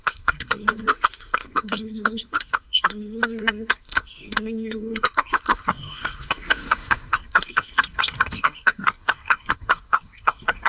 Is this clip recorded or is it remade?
remade